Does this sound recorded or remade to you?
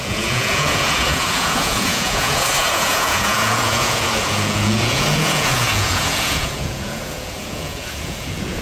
remade